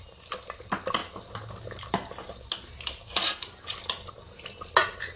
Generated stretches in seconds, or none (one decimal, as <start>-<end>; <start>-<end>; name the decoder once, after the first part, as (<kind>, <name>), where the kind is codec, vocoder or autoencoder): none